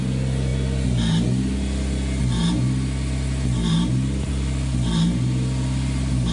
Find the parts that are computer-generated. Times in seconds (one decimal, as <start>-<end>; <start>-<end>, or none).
none